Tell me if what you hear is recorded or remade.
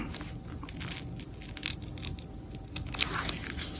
recorded